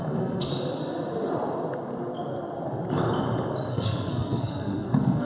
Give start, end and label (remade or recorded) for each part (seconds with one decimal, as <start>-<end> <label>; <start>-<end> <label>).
0.0-0.5 remade; 0.5-3.7 recorded; 3.7-5.3 remade